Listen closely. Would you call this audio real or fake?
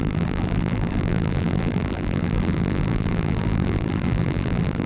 fake